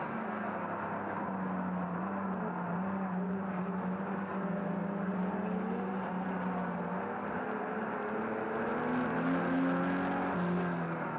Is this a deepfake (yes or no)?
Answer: no